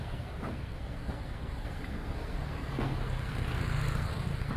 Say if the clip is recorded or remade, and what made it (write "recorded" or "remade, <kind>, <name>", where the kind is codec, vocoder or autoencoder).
remade, codec, SNAC